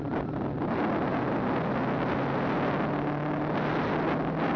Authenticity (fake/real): real